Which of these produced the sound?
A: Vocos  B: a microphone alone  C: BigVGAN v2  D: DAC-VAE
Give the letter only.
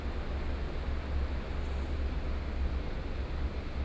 B